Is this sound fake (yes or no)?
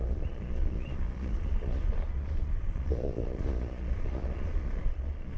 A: yes